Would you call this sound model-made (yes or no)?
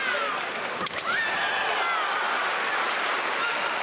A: no